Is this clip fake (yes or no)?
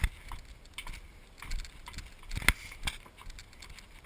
no